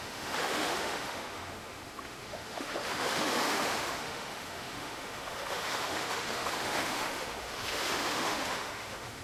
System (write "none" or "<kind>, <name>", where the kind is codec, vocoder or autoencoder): autoencoder, DAC-VAE